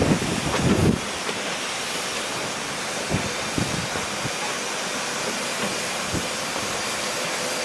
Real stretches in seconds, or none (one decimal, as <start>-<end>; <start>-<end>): 0.0-5.7; 6.7-7.6